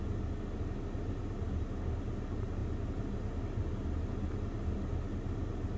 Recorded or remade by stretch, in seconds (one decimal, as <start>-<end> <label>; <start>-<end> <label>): 0.0-5.8 recorded